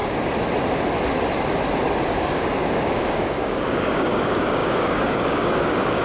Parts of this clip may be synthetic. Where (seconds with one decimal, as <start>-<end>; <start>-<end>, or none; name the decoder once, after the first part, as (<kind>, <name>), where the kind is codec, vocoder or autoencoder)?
2.1-6.0 (codec, DAC)